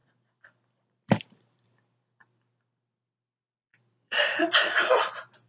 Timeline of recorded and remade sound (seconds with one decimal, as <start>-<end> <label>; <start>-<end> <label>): 0.0-2.2 remade; 2.2-3.7 recorded; 3.7-5.1 remade; 5.1-5.5 recorded